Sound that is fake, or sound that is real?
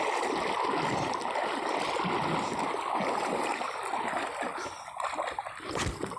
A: real